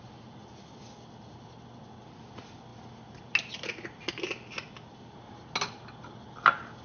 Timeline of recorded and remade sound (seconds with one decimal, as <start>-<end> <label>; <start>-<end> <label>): 0.0-6.8 recorded